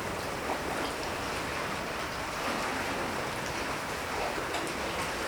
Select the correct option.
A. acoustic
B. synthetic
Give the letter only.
A